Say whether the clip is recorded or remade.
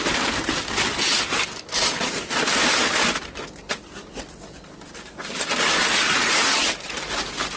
recorded